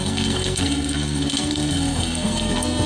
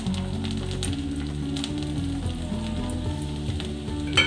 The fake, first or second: first